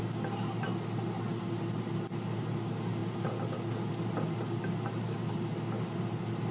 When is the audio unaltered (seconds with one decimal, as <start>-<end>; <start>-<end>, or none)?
0.0-6.5